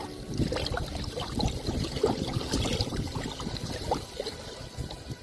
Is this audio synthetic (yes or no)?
no